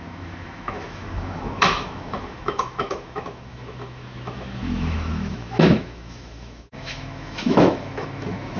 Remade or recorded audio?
remade